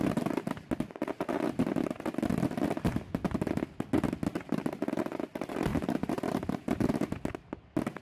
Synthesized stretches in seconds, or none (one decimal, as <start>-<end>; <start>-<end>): 5.7-6.9